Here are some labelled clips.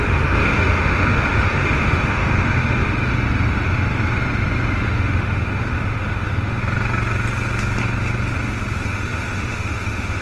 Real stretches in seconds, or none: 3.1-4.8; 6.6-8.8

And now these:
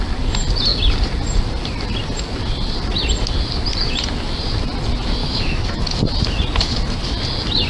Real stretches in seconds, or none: 0.0-5.2; 5.8-7.7

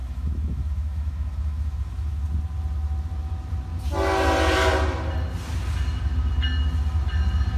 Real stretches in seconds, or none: 2.2-7.6

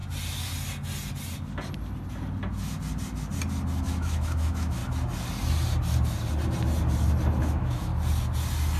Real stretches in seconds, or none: 0.0-3.8; 4.8-7.4; 7.9-8.8

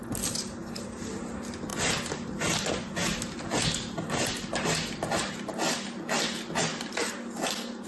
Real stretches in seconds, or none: 0.0-7.9

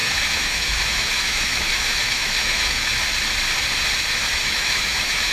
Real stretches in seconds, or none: 2.9-4.3

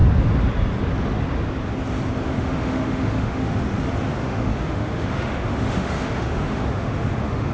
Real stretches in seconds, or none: 0.0-2.2; 3.7-4.2